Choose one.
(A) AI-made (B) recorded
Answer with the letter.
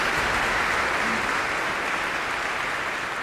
B